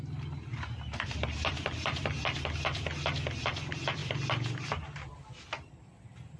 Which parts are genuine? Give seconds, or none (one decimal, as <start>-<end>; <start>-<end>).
0.0-6.4